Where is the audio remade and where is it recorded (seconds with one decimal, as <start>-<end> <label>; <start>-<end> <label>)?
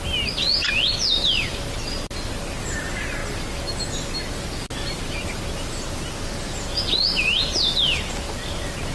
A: 0.0-8.9 recorded